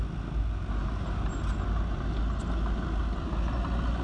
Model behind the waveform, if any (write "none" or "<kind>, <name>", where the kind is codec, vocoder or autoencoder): none